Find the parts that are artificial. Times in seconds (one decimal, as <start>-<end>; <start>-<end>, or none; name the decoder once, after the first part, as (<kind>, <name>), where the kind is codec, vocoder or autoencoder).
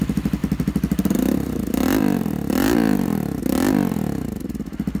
0.4-3.4 (vocoder, BigVGAN v2)